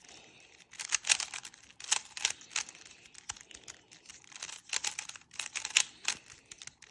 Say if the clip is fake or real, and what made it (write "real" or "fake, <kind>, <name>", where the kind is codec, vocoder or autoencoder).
real